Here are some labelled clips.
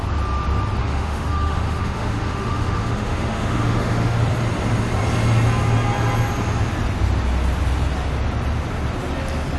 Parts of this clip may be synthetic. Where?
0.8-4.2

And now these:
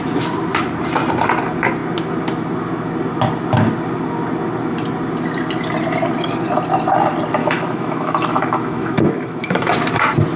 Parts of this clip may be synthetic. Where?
7.4-9.6